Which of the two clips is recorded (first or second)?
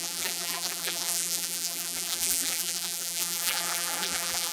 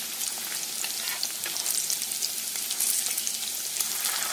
second